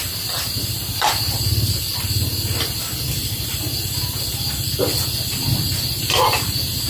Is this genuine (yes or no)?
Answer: yes